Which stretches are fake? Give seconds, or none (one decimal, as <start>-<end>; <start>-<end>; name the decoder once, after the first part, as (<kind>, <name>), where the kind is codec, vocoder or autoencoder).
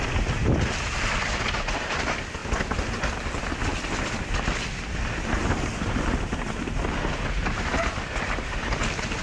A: none